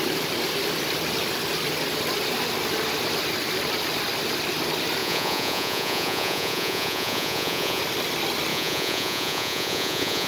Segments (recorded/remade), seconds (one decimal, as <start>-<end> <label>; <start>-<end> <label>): 0.0-5.0 recorded; 5.0-7.8 remade; 7.8-8.5 recorded; 8.5-10.3 remade